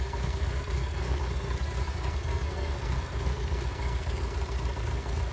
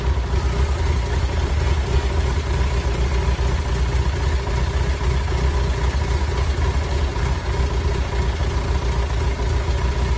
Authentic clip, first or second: second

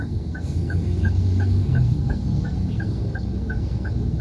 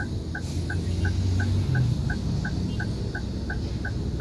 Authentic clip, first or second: second